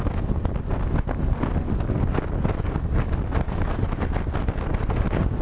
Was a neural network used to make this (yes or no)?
no